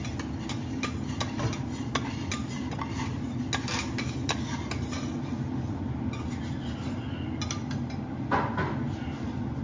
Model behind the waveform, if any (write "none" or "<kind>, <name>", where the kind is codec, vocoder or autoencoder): none